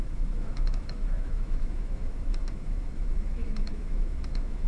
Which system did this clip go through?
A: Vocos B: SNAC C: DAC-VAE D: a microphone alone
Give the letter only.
C